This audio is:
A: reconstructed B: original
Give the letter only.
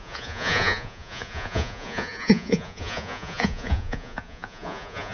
A